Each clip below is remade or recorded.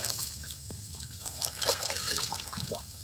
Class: remade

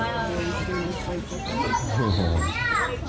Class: recorded